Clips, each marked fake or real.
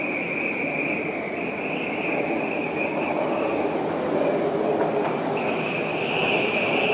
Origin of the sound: real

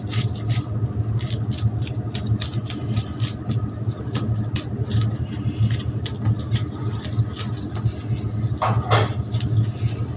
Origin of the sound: real